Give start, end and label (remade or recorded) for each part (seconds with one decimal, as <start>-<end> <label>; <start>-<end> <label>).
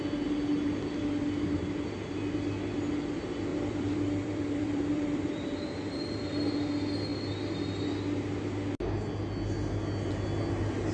0.0-3.5 recorded; 3.5-6.5 remade; 6.5-10.9 recorded